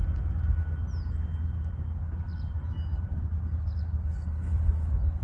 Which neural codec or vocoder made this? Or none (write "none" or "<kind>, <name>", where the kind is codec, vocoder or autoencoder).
none